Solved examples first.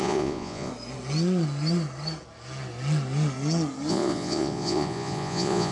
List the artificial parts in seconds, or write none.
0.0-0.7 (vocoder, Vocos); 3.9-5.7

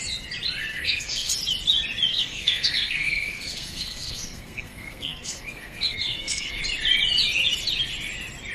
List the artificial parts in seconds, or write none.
0.6-1.3 (codec, SNAC); 2.1-6.6

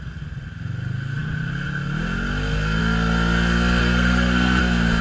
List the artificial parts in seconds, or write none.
3.8-4.6 (codec, SNAC)

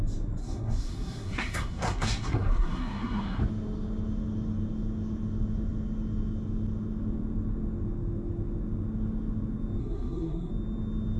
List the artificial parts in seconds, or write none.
0.4-3.4 (codec, SNAC); 9.8-10.5

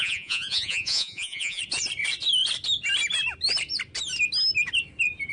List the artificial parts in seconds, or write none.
0.0-1.6 (vocoder, Vocos)

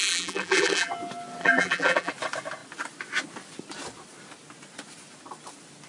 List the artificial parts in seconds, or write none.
0.0-0.9 (vocoder, BigVGAN v2); 1.4-2.1

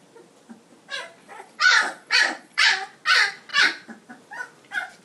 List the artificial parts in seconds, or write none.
1.2-2.7 (vocoder, Vocos)

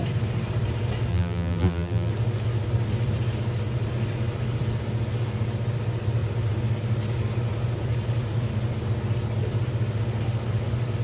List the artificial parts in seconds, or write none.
1.1-2.1 (vocoder, BigVGAN v2)